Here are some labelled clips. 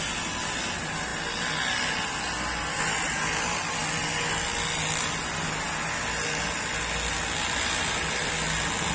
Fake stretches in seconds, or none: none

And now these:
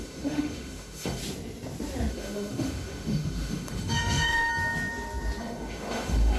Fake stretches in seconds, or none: 0.0-1.2 (autoencoder, DAC-VAE); 2.1-4.5; 5.4-6.4